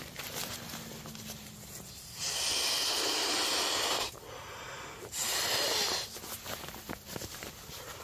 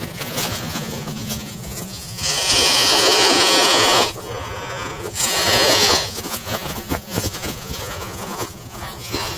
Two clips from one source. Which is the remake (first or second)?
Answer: second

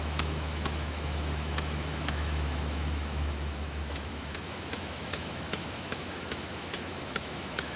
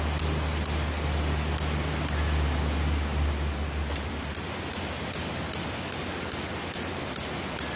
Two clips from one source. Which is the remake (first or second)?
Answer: first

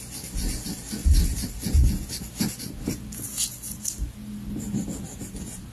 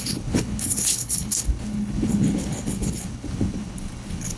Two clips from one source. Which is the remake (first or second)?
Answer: second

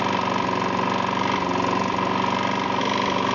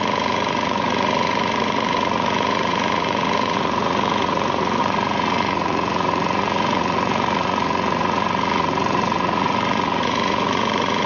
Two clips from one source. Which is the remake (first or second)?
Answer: second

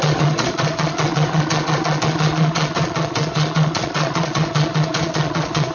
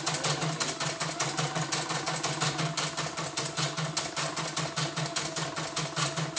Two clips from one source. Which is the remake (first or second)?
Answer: first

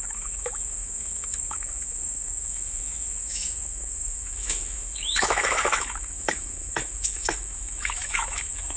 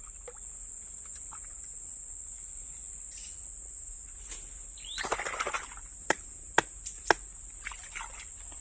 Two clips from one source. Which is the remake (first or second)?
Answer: first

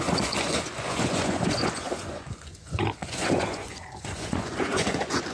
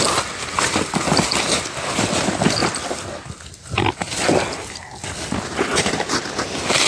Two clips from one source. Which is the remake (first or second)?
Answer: first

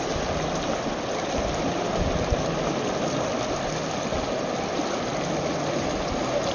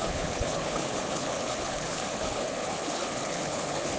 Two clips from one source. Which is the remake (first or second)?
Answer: second